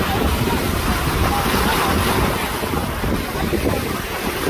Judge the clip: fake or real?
real